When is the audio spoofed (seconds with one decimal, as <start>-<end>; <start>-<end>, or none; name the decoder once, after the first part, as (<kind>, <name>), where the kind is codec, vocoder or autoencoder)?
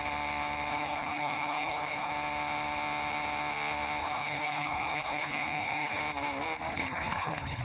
0.7-2.1 (codec, HILCodec); 4.0-6.0; 6.7-7.6